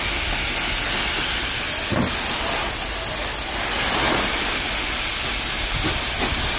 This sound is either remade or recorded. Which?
recorded